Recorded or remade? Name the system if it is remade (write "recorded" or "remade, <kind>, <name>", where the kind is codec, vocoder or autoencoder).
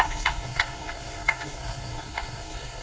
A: remade, codec, SNAC